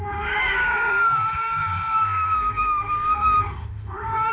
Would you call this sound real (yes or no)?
no